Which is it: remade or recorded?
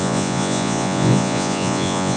remade